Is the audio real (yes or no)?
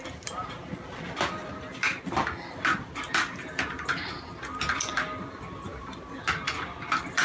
yes